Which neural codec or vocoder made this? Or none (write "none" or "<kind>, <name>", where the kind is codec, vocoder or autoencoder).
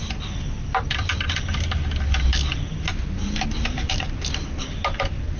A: none